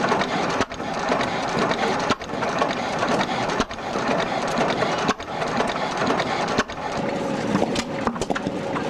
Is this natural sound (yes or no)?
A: no